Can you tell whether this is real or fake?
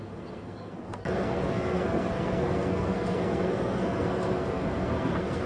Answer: fake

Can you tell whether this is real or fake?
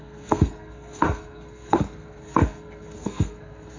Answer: fake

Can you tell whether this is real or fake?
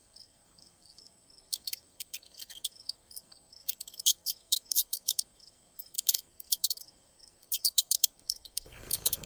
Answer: fake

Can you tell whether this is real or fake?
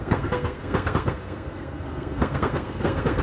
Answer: fake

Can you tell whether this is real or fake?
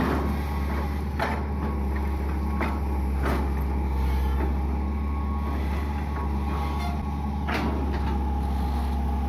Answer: real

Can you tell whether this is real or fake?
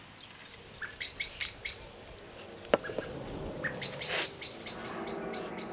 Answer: real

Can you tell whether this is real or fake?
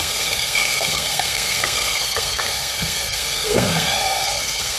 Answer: fake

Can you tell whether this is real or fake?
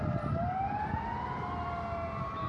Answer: real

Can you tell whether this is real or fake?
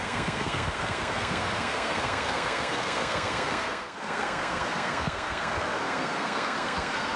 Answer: fake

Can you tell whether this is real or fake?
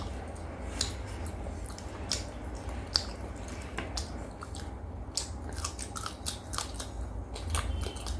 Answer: real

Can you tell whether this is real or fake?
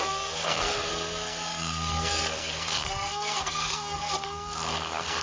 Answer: fake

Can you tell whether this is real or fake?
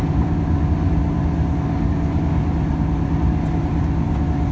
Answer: real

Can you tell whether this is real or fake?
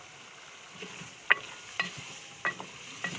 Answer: real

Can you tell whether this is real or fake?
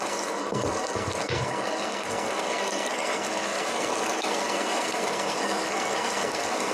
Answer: fake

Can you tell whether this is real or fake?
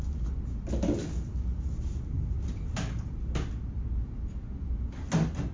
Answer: real